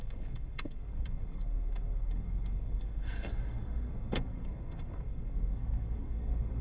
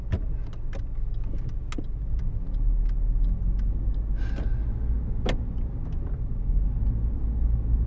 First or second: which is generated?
first